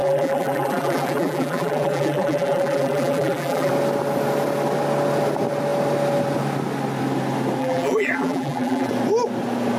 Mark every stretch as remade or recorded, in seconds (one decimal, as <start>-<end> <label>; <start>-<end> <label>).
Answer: 0.0-3.7 remade; 3.7-7.6 recorded; 7.6-8.9 remade; 8.9-9.8 recorded